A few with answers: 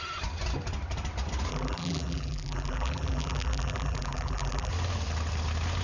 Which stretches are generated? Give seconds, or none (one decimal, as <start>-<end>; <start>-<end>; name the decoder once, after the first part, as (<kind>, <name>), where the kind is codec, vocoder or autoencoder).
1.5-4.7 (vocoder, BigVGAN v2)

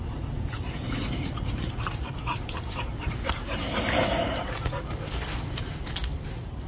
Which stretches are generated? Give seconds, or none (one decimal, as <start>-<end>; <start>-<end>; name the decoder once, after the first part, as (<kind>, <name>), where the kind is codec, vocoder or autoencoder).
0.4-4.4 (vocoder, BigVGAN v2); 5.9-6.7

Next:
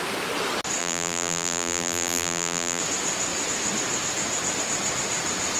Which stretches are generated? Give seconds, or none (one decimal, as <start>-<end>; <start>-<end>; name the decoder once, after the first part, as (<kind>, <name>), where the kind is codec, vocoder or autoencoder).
0.8-2.8 (vocoder, BigVGAN v2)

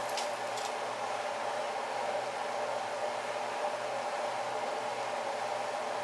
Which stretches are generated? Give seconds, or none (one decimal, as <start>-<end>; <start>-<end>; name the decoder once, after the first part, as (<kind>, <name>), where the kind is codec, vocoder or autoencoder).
0.0-2.4 (vocoder, BigVGAN v2); 4.7-6.0

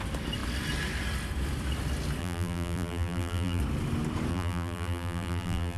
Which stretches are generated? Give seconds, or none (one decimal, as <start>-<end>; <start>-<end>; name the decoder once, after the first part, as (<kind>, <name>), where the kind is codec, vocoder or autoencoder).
2.2-3.6 (vocoder, BigVGAN v2); 4.3-5.8

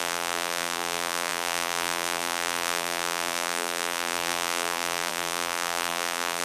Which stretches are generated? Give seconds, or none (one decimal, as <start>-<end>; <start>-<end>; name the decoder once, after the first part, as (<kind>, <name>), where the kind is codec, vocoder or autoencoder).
0.0-6.4 (vocoder, BigVGAN v2)